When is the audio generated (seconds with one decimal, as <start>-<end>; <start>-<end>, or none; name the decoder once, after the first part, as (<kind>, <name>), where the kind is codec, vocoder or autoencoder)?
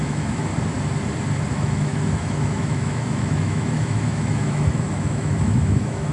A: 0.0-0.5 (autoencoder, DAC-VAE); 1.5-6.1